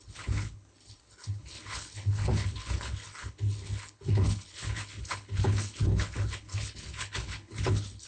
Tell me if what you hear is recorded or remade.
remade